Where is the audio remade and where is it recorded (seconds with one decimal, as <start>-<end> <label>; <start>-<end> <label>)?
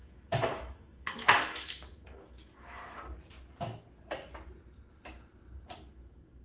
0.0-2.8 remade; 2.8-5.9 recorded; 5.9-6.4 remade